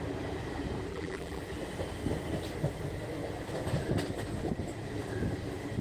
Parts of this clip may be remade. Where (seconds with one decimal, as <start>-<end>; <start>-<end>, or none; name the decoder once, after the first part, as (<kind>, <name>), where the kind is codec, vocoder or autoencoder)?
0.9-1.4 (vocoder, BigVGAN v2)